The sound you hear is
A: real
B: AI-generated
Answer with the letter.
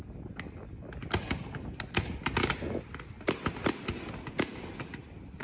A